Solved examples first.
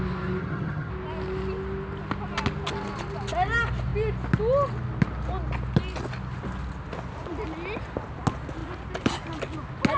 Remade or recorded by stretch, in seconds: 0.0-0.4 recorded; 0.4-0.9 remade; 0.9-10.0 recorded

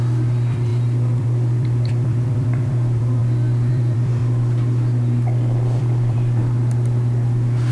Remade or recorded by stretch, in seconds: 0.0-3.2 remade; 3.2-3.7 recorded; 3.7-4.2 remade; 4.2-5.8 recorded; 5.8-6.4 remade; 6.4-7.7 recorded